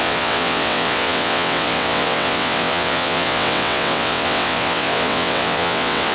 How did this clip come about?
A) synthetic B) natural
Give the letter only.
A